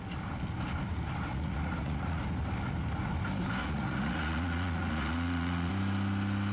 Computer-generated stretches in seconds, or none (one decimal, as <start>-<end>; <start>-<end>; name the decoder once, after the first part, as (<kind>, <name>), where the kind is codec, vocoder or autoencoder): 1.3-2.2 (vocoder, Vocos); 3.6-5.7

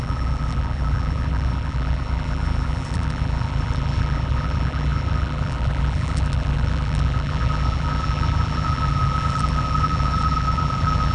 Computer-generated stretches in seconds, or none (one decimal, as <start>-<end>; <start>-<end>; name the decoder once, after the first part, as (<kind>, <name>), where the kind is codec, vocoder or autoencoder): 0.0-11.1 (vocoder, BigVGAN v2)